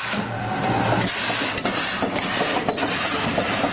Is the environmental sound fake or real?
real